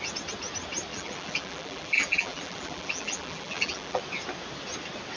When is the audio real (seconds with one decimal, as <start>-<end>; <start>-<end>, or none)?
0.0-0.9; 4.0-5.2